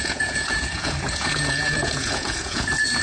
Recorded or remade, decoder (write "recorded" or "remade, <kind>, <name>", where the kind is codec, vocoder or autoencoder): remade, vocoder, Vocos